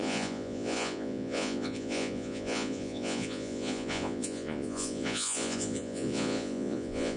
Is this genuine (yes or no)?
no